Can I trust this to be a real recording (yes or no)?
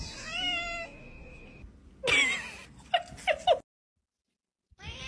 yes